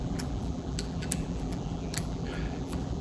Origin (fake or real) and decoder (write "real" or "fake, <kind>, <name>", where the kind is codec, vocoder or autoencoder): fake, vocoder, BigVGAN v2